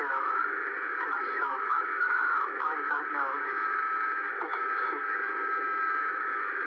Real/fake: fake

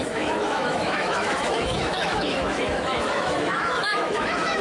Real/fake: fake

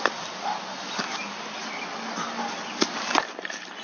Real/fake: real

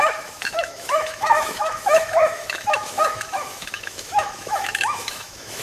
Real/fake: fake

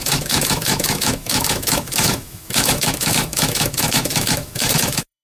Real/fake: fake